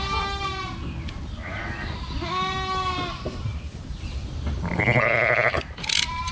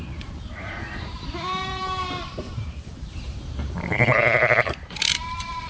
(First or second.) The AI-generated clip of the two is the second